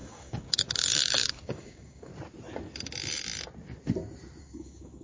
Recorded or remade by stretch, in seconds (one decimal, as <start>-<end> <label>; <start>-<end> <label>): 0.0-2.1 remade; 2.1-4.4 recorded; 4.4-5.0 remade